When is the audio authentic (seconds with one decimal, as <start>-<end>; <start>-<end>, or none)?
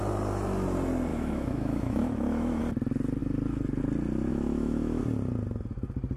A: 0.0-1.1; 2.6-4.3; 5.0-6.2